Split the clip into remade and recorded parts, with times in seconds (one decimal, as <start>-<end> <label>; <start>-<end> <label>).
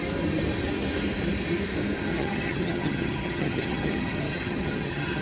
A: 0.0-2.1 recorded; 2.1-5.2 remade